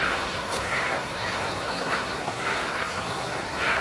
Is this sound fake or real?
fake